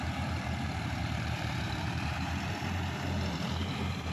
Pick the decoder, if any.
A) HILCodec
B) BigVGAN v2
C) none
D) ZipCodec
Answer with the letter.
B